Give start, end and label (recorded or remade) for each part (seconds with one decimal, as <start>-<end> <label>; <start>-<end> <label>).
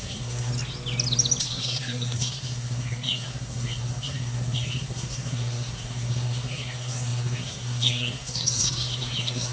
0.0-0.5 remade; 0.5-1.4 recorded; 1.4-9.5 remade